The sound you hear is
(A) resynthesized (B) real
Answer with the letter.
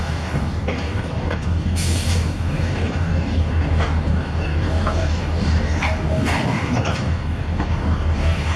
A